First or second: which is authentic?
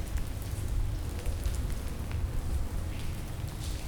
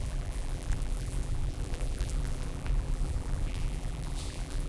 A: first